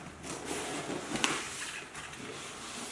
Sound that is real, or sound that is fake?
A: real